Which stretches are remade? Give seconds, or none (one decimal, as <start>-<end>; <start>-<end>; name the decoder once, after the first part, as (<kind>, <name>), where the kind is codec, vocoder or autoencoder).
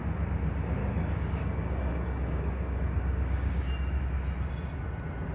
0.8-4.0 (codec, DAC)